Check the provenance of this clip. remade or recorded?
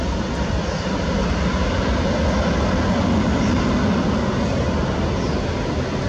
recorded